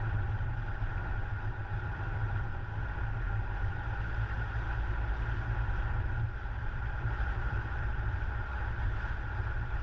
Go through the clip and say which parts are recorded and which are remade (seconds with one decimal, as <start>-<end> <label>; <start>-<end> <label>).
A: 0.0-0.9 remade; 0.9-1.5 recorded; 1.5-2.5 remade; 2.5-6.6 recorded; 6.6-8.5 remade; 8.5-9.2 recorded; 9.2-9.8 remade